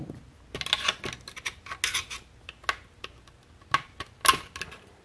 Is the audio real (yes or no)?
yes